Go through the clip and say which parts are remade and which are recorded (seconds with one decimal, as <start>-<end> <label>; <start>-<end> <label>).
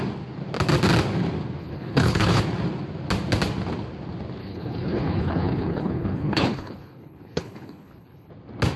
0.0-1.6 recorded; 1.6-2.4 remade; 2.4-4.4 recorded; 4.4-8.3 remade; 8.3-8.8 recorded